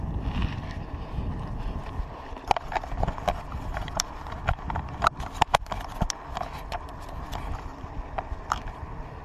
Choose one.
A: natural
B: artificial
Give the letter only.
A